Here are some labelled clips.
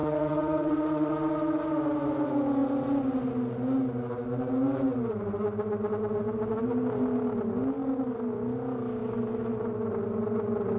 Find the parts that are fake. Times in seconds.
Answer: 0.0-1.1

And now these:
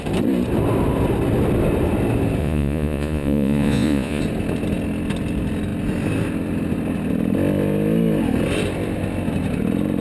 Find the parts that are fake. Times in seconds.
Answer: 2.4-4.2

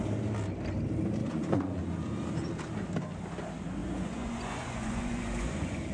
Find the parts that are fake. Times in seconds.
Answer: 1.2-1.8; 3.8-5.9

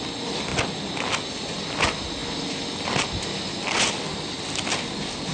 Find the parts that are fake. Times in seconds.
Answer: none

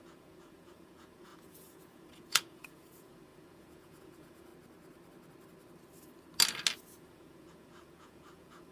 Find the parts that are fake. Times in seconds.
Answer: 0.0-4.5; 6.8-8.7

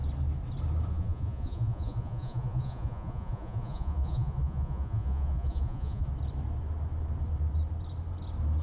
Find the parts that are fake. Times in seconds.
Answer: 0.9-6.1

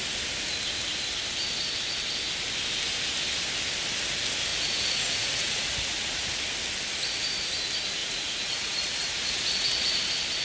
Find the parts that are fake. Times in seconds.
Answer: 4.5-6.4; 8.0-10.0